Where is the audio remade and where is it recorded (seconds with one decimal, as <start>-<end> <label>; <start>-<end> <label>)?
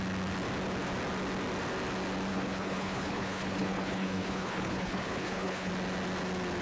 0.0-2.3 recorded; 2.3-5.7 remade; 5.7-6.6 recorded